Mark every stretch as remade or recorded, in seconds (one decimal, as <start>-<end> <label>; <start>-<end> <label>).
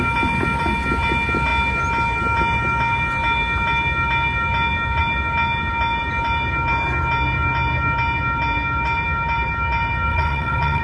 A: 0.0-10.1 recorded; 10.1-10.8 remade